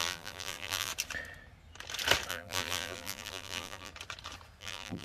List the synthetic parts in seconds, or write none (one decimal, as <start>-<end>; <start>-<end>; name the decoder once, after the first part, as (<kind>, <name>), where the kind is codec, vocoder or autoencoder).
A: 0.0-0.9 (vocoder, BigVGAN v2); 2.3-3.9; 4.6-5.0

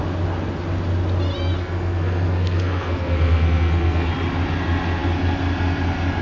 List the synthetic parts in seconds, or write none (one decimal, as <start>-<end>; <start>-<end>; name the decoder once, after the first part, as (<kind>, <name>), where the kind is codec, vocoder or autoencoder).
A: 1.6-4.1 (codec, SNAC)

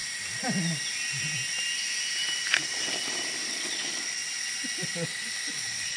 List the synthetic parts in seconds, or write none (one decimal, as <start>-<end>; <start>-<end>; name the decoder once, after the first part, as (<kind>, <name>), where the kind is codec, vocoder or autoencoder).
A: 3.5-4.2 (vocoder, Vocos); 5.5-6.0